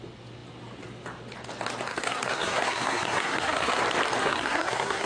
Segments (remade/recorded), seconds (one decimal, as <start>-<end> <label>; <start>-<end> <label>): 0.0-1.9 recorded; 1.9-3.8 remade; 3.8-4.2 recorded; 4.2-5.1 remade